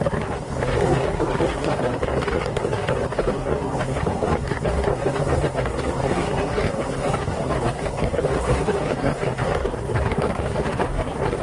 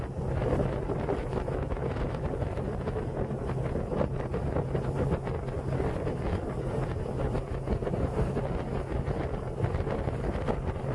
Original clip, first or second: second